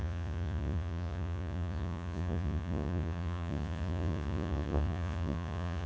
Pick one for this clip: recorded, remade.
remade